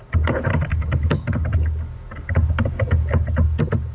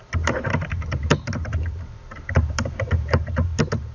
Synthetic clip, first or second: second